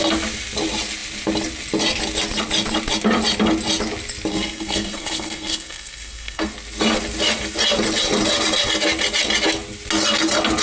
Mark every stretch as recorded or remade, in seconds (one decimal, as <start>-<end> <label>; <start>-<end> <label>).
0.0-4.3 recorded; 4.3-6.5 remade; 6.5-10.6 recorded